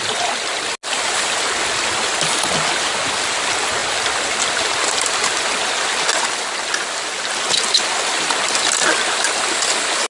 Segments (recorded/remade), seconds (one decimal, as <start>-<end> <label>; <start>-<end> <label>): 0.0-10.1 recorded